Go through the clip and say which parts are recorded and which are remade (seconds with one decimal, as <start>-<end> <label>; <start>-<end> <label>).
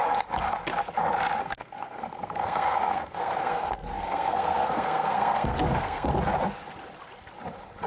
0.0-1.4 recorded; 1.4-6.1 remade; 6.1-7.9 recorded